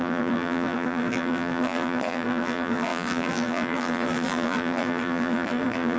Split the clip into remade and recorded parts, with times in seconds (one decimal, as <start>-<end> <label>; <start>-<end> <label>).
0.0-6.0 remade